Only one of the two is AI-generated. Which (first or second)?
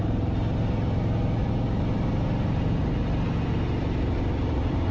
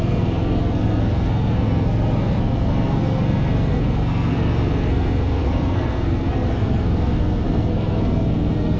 second